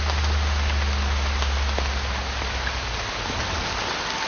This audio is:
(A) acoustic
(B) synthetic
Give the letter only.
A